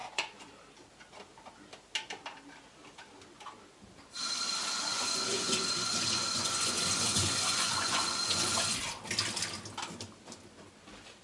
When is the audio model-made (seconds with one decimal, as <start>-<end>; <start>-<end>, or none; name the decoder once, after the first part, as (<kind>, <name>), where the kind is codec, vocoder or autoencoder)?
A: 0.0-0.5 (vocoder, Vocos); 4.7-8.8